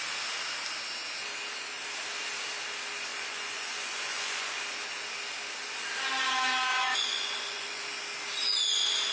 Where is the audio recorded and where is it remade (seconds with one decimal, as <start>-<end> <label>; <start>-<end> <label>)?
0.0-3.1 recorded; 3.1-4.6 remade; 4.6-6.7 recorded; 6.7-7.8 remade; 7.8-9.1 recorded